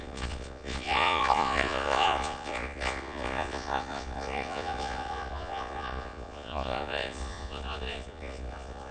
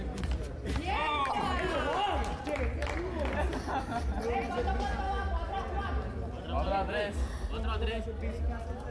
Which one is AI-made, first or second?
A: first